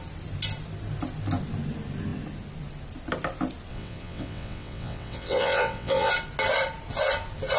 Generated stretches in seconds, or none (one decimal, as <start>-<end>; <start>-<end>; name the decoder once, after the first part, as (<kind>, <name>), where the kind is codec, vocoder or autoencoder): 3.7-6.1 (vocoder, WaveNeXt)